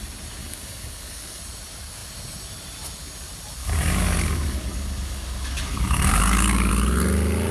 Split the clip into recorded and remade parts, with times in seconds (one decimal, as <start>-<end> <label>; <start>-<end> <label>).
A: 0.0-0.4 recorded; 0.4-1.4 remade; 1.4-3.6 recorded; 3.6-6.7 remade; 6.7-7.5 recorded